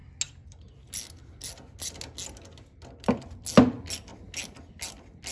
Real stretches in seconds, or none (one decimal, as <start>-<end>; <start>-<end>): 0.0-5.3